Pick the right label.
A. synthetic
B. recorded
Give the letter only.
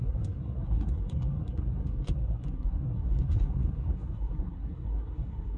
A